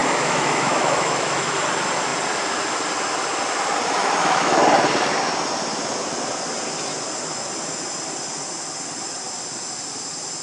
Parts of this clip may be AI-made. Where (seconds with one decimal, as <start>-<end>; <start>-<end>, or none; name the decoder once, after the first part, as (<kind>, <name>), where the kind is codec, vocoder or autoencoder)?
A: 0.0-1.5 (autoencoder, DAC-VAE); 4.0-4.6